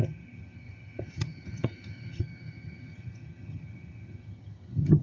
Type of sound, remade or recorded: remade